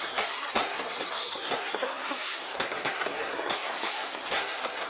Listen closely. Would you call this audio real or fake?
fake